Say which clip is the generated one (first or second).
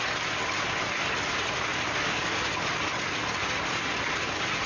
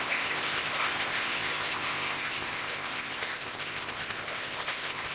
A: second